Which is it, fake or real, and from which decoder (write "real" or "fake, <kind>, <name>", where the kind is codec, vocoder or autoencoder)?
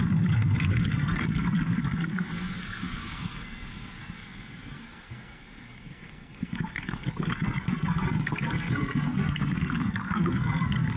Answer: fake, codec, SNAC